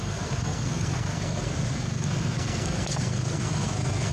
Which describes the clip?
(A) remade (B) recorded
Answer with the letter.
A